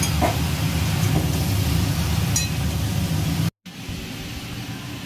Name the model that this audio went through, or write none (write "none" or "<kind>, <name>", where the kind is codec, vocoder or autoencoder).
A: none